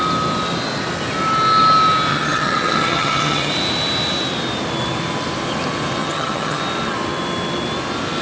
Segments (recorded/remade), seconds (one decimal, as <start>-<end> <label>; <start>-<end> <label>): 0.0-2.1 recorded; 2.1-3.5 remade; 3.5-6.0 recorded; 6.0-6.6 remade; 6.6-8.2 recorded